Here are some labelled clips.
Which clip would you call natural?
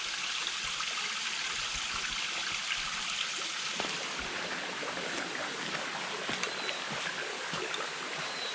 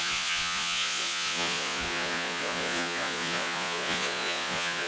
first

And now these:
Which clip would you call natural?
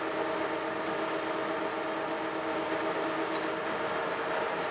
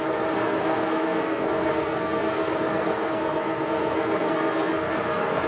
first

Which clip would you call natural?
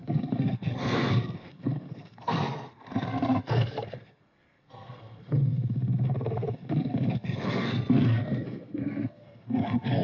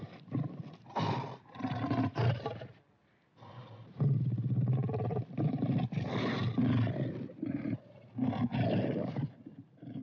second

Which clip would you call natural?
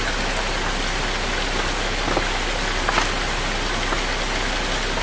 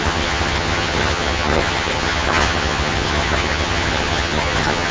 first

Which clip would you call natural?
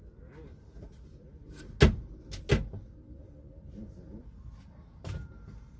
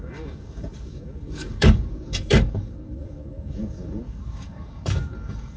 first